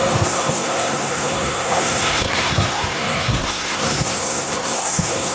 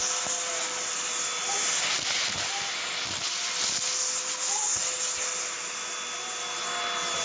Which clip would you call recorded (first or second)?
second